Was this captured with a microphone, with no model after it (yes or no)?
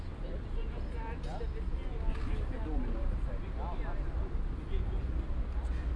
yes